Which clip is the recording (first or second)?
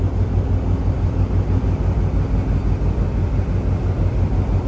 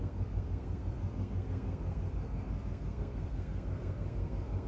first